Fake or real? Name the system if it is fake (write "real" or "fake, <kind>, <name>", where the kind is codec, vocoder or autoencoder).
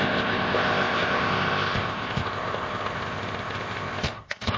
fake, codec, ZipCodec